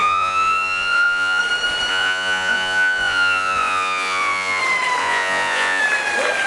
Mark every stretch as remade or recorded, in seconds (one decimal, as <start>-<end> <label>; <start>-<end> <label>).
0.0-1.4 remade; 1.4-1.9 recorded; 1.9-4.6 remade; 4.6-5.0 recorded; 5.0-5.8 remade; 5.8-6.5 recorded

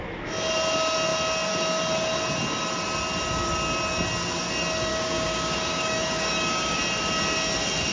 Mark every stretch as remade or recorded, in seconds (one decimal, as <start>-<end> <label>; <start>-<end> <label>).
0.0-4.9 recorded; 4.9-6.8 remade; 6.8-7.9 recorded

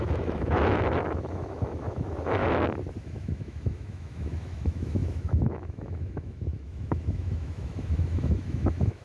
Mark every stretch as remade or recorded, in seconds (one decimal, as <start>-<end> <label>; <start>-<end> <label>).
0.0-2.4 remade; 2.4-3.0 recorded; 3.0-9.0 remade

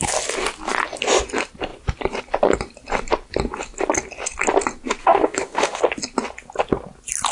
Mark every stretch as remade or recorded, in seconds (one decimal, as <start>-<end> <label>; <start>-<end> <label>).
0.0-5.0 recorded; 5.0-5.8 remade; 5.8-7.3 recorded